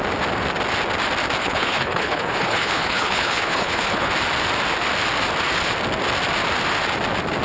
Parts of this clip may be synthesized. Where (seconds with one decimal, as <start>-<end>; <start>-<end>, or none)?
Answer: 1.4-4.1